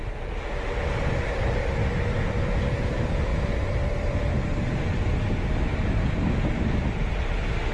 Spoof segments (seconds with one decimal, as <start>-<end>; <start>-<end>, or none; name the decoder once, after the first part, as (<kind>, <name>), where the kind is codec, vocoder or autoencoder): none